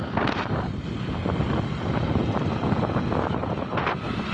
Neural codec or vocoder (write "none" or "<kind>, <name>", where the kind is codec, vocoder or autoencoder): none